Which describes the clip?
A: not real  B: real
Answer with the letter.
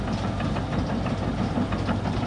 B